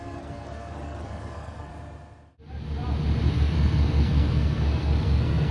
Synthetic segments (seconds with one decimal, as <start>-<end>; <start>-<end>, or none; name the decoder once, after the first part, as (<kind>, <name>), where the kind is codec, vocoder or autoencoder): 0.0-1.7 (codec, SNAC); 3.3-5.5